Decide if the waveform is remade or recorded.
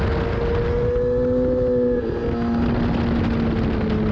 recorded